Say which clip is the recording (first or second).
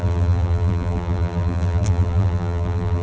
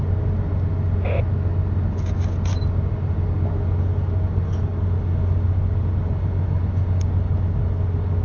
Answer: second